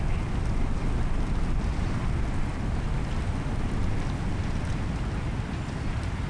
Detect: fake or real real